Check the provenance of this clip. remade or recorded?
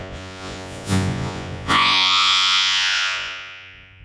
remade